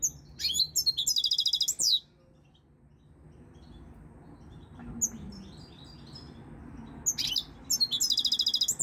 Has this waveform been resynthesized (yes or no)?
no